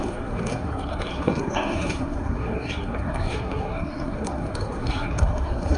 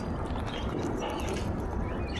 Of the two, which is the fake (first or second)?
first